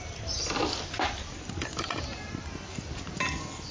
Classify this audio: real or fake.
real